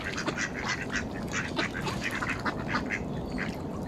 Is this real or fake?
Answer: real